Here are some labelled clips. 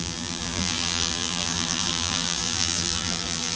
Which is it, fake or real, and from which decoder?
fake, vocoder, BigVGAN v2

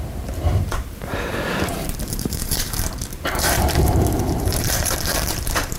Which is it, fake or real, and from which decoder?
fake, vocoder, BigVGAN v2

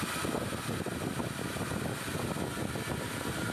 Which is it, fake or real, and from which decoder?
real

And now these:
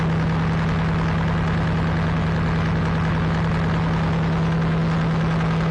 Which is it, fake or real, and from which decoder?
real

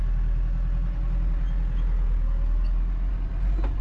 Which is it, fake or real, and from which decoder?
real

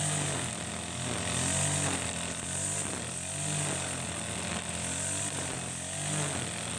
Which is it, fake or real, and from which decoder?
real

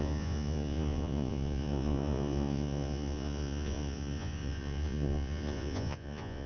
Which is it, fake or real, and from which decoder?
fake, vocoder, Vocos